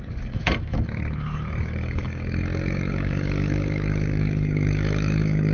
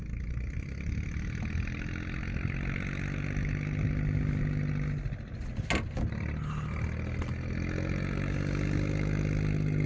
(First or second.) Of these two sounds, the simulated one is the first